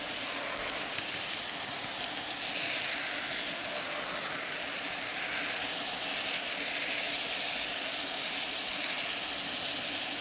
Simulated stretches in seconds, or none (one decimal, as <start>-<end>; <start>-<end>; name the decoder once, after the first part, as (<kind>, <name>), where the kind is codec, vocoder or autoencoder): none